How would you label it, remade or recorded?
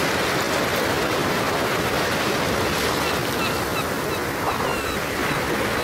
recorded